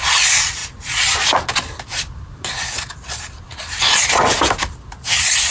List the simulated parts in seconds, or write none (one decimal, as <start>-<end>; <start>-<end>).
none